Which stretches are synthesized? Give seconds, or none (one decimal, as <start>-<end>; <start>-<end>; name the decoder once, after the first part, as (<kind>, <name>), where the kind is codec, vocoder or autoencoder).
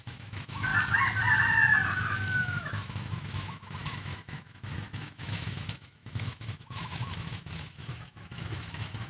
0.0-0.7 (autoencoder, DAC-VAE); 2.4-9.1